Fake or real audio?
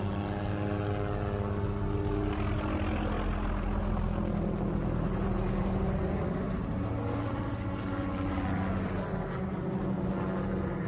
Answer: real